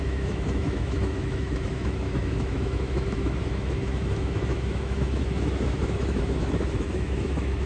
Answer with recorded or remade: remade